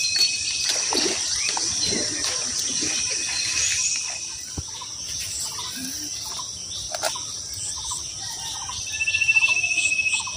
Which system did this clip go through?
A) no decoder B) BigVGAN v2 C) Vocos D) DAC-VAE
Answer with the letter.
A